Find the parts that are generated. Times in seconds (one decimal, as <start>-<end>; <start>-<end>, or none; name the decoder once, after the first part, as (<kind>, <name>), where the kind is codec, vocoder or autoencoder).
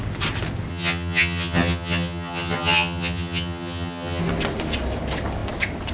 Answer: 0.7-4.2 (vocoder, HiFi-GAN)